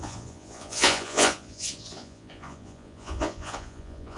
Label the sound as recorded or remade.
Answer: remade